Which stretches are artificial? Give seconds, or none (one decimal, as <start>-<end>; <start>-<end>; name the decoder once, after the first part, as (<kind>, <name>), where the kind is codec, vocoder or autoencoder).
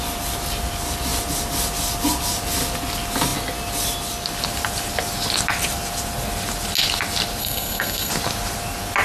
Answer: 7.4-8.1 (codec, SNAC)